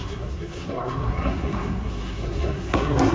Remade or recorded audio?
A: remade